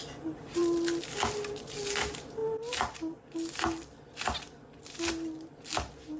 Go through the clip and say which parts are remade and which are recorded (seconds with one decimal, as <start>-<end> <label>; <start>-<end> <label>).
0.0-6.2 recorded